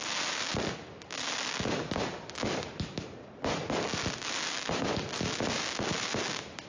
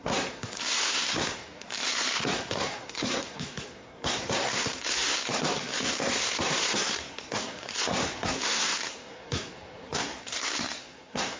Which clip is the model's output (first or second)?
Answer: second